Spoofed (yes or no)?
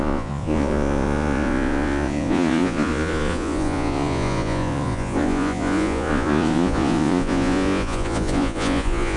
yes